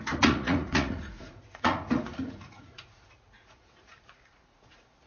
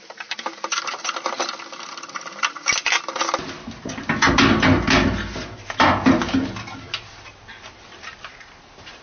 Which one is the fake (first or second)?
first